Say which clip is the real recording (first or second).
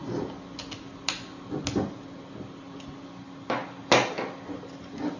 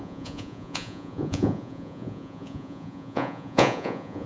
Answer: first